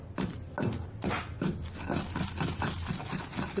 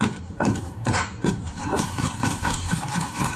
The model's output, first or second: second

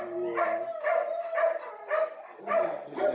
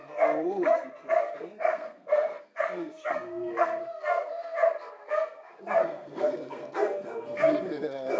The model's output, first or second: second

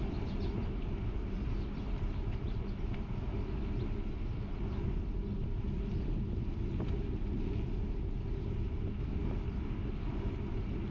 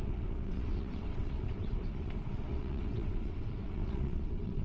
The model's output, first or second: second